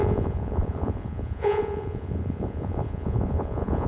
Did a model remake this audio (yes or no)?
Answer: yes